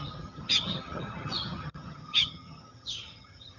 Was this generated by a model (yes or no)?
yes